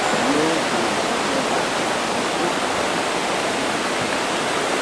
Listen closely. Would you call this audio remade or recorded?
recorded